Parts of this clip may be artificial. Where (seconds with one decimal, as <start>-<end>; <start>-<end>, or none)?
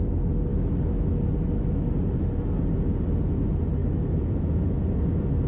0.5-1.2; 3.8-4.8